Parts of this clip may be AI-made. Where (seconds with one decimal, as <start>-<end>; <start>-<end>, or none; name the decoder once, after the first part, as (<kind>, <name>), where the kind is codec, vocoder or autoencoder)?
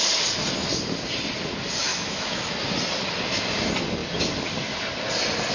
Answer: 1.9-2.5 (autoencoder, DAC-VAE)